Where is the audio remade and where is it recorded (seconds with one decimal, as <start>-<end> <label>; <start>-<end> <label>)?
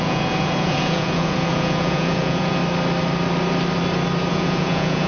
0.0-2.6 remade; 2.6-4.3 recorded; 4.3-5.1 remade